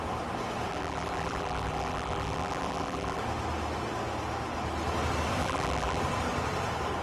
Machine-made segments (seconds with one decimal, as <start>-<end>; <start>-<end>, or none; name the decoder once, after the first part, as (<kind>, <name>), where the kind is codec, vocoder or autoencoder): 0.7-3.2 (vocoder, BigVGAN v2); 5.4-6.0